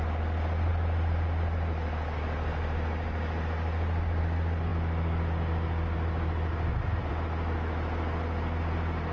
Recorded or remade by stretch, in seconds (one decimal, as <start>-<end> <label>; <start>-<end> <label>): 0.0-9.1 recorded